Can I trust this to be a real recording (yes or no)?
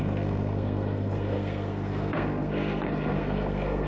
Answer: no